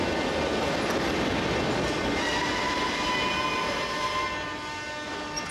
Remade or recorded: recorded